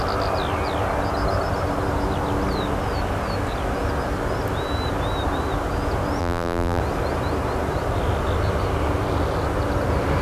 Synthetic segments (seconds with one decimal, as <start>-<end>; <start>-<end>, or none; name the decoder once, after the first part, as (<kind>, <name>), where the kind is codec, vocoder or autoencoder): 6.2-6.8 (vocoder, BigVGAN v2)